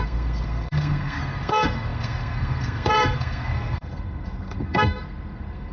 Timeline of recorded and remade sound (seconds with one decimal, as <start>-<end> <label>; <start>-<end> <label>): 0.0-5.7 remade